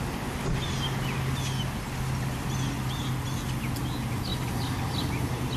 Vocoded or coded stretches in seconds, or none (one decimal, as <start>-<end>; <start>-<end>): none